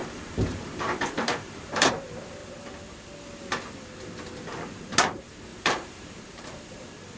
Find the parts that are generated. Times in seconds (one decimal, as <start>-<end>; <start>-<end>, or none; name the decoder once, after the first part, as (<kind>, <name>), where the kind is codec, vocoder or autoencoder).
0.0-1.9 (vocoder, BigVGAN v2); 5.5-6.4